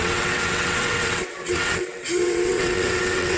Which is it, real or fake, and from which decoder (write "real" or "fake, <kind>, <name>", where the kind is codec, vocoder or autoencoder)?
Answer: fake, vocoder, WaveNeXt